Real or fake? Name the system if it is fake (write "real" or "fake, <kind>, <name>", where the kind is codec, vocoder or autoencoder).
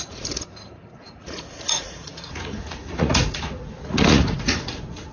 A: fake, vocoder, Vocos